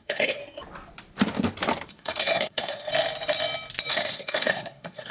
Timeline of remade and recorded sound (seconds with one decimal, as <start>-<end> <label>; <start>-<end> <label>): 0.0-0.4 remade; 0.4-1.9 recorded; 1.9-2.9 remade; 2.9-3.9 recorded; 3.9-5.1 remade